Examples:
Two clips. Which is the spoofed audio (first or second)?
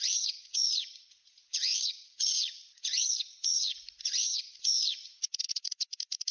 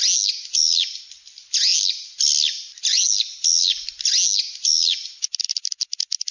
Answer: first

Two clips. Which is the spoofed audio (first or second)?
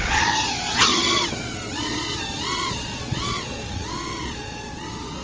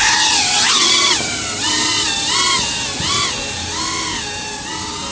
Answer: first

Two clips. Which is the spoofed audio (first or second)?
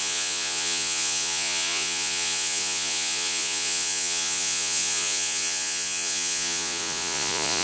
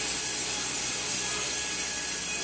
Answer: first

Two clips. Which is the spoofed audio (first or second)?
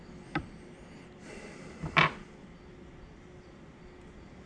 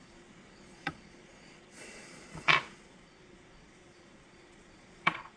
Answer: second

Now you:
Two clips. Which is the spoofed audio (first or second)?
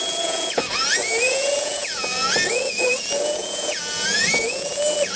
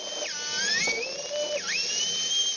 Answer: first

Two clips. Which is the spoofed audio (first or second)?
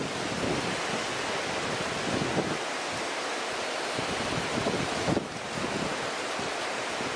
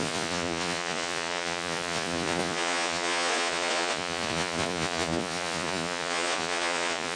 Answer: second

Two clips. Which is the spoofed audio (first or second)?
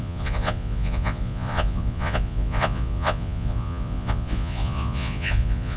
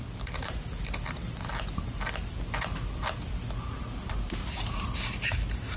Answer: first